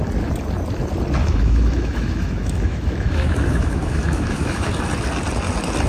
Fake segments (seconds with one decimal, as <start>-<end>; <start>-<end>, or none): 1.2-4.7